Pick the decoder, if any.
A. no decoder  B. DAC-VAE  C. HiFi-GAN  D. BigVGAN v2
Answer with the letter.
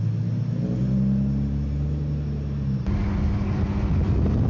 A